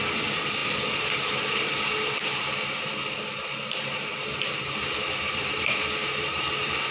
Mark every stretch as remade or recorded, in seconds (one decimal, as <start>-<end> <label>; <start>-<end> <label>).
0.0-4.1 remade; 4.1-4.6 recorded; 4.6-6.9 remade